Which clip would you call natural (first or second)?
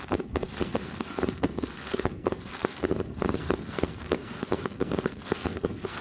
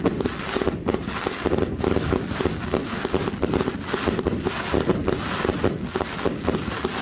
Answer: second